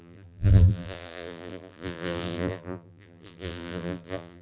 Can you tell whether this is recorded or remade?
remade